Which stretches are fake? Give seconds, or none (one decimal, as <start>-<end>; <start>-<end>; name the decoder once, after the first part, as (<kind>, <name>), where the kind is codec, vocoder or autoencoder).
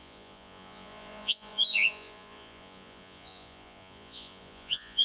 0.0-5.0 (vocoder, Vocos)